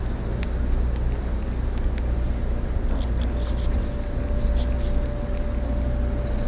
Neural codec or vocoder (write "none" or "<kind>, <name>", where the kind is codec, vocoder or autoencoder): none